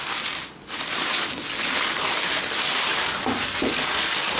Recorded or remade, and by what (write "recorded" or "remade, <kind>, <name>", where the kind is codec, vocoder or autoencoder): recorded